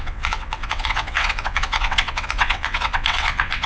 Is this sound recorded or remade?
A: remade